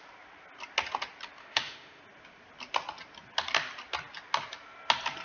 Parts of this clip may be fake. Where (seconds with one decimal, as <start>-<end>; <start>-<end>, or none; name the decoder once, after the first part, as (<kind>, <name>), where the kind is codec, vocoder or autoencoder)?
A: 1.4-2.0 (autoencoder, DAC-VAE)